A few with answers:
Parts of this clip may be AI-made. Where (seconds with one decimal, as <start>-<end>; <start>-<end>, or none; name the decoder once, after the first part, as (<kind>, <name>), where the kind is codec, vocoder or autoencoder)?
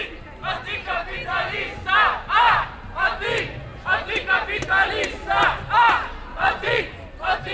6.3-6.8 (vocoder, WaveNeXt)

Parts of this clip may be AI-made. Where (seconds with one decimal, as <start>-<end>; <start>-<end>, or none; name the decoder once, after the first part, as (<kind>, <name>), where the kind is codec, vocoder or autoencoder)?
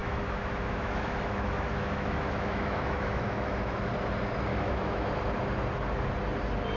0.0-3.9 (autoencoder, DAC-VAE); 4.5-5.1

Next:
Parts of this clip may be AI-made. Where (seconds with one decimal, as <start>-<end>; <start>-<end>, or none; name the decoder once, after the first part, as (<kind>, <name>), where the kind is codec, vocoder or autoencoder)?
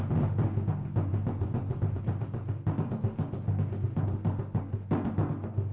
1.1-2.0 (vocoder, BigVGAN v2)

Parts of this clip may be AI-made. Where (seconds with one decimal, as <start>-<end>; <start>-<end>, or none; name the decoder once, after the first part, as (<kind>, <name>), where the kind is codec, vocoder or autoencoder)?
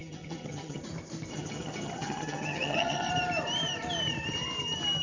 0.0-0.8 (vocoder, HiFi-GAN); 1.3-3.1